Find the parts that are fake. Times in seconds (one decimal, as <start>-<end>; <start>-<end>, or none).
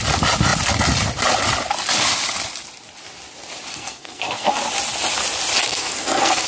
3.7-4.6; 5.7-6.5